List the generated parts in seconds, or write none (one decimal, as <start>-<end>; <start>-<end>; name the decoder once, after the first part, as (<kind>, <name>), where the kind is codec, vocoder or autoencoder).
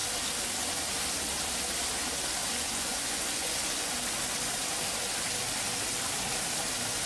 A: 2.4-3.9 (vocoder, Vocos)